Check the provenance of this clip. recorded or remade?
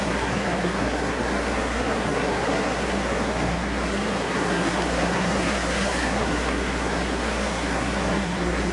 remade